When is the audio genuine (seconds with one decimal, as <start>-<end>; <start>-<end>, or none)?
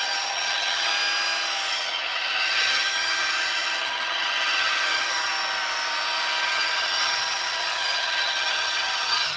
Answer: 0.9-1.7; 5.3-6.4